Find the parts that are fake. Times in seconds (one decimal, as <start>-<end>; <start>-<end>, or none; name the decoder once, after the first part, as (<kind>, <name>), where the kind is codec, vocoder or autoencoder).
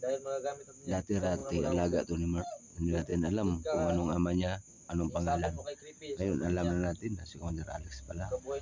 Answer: 1.4-2.4 (vocoder, Vocos)